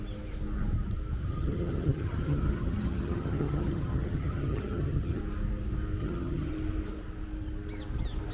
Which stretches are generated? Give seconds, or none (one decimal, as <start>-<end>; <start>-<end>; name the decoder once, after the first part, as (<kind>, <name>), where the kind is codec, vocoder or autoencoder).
1.2-5.2 (vocoder, HiFi-GAN); 6.0-6.5